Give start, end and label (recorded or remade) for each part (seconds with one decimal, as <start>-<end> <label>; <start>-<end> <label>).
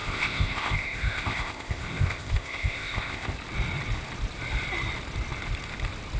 0.0-3.3 remade; 3.3-6.2 recorded